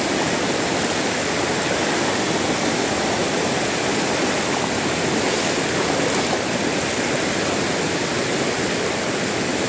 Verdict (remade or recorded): recorded